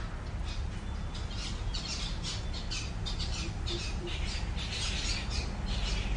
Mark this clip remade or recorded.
recorded